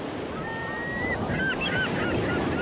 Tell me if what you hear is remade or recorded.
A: recorded